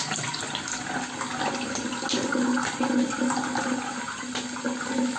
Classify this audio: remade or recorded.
recorded